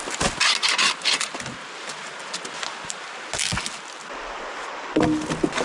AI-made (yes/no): no